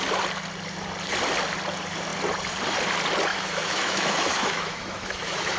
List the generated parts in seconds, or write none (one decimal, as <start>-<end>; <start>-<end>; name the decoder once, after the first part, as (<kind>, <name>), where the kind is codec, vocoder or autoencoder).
3.3-5.6 (autoencoder, DAC-VAE)